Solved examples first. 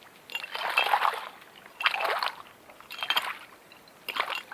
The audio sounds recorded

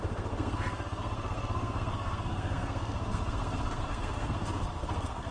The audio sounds remade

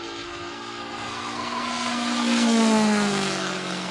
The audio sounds remade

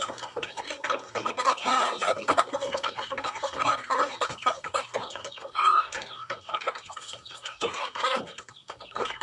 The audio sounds remade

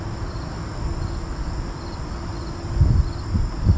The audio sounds recorded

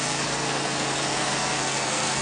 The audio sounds remade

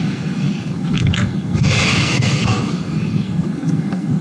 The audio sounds remade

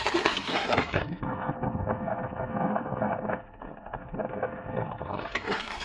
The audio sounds remade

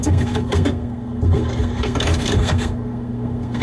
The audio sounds remade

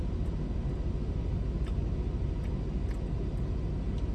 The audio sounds recorded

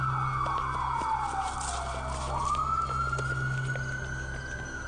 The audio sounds recorded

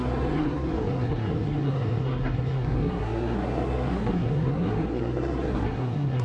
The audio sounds remade